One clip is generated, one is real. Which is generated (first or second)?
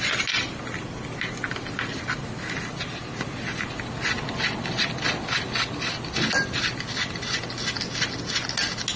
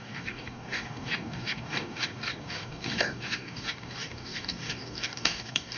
second